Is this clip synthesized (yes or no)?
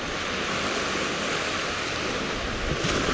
no